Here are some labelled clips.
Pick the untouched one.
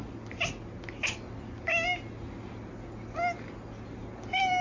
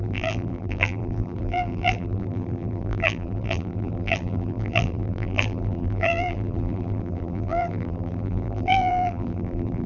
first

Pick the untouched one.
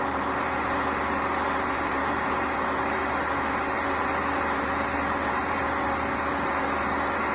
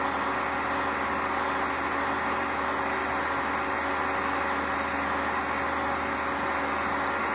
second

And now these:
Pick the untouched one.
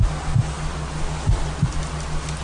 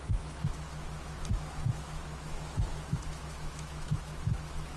first